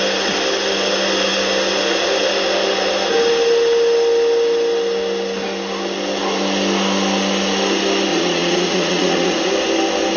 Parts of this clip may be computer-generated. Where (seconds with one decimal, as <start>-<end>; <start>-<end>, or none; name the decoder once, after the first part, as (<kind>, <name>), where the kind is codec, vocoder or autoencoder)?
8.1-9.5 (vocoder, Vocos)